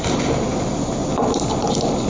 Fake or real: real